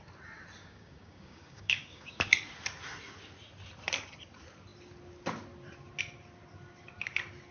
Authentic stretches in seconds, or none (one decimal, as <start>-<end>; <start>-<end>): 0.0-0.6; 2.3-7.5